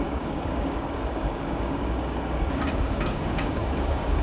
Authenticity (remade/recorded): remade